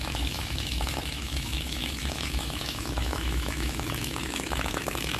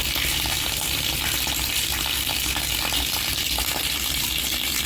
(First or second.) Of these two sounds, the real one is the second